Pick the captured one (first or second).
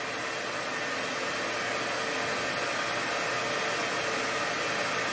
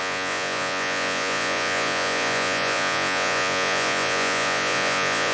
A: first